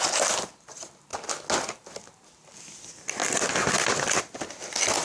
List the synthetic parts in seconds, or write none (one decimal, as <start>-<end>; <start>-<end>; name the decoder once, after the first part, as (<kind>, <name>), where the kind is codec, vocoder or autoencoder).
none